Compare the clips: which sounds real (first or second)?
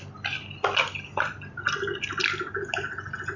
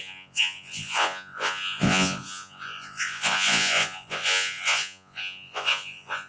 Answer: first